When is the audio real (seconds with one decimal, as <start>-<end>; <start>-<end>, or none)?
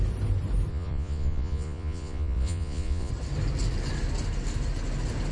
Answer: 0.0-0.7; 3.1-5.3